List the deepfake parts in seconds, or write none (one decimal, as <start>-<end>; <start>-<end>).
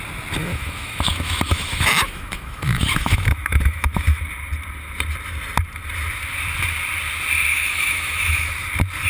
0.4-4.2; 7.5-8.5